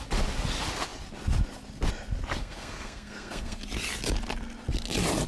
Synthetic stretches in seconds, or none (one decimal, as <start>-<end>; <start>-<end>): 2.4-3.6